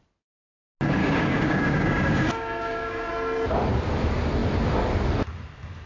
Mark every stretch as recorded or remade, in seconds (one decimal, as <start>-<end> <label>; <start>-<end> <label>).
0.0-1.0 recorded; 1.0-3.1 remade; 3.1-5.9 recorded